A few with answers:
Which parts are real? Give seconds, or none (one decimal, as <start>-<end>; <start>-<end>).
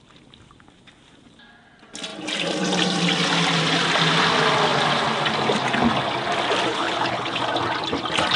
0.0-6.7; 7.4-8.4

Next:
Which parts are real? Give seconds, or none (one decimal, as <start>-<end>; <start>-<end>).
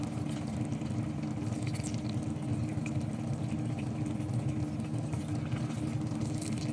0.0-6.7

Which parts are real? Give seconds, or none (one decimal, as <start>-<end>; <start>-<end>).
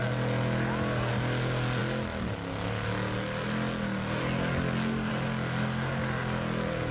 0.0-6.9